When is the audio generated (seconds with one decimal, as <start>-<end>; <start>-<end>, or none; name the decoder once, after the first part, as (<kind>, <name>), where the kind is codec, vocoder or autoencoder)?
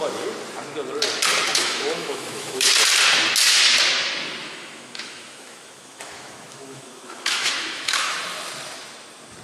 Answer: 1.5-2.7 (autoencoder, DAC-VAE); 4.4-8.2